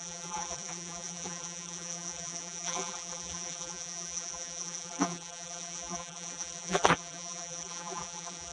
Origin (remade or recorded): remade